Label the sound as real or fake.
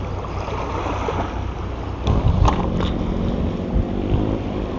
real